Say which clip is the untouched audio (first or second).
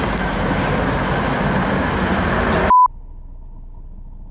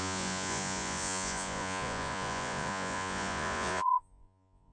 first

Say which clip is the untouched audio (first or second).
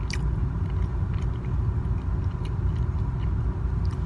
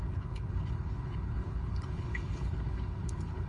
first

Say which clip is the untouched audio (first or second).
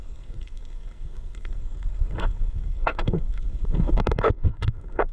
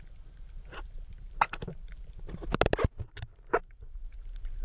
second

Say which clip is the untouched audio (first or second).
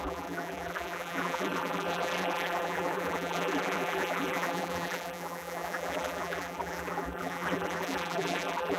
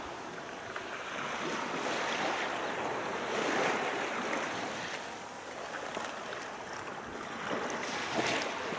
second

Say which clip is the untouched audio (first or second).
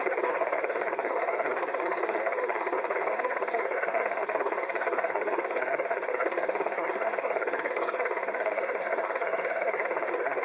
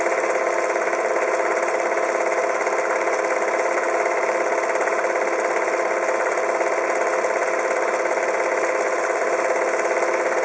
second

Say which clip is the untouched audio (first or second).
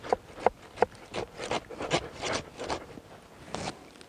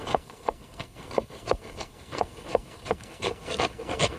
first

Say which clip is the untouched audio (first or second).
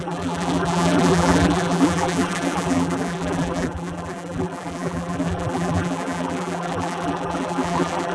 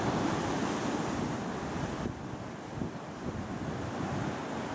second